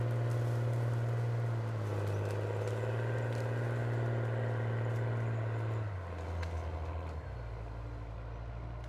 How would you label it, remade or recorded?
recorded